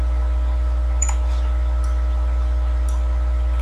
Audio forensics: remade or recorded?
recorded